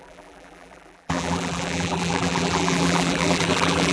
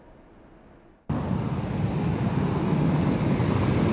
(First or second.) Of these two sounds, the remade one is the first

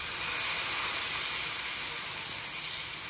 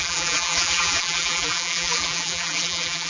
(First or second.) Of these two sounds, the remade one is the second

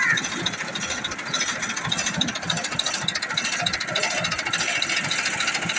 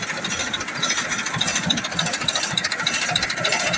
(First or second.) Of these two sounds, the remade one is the second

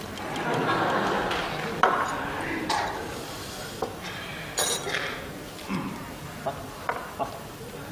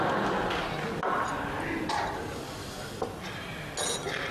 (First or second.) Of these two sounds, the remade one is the first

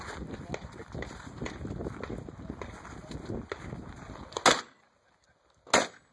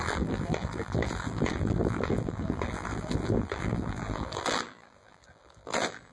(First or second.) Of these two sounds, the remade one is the second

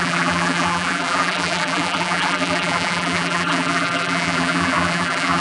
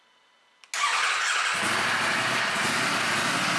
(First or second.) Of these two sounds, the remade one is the first